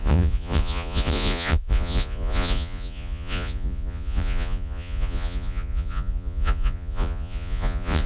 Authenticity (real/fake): fake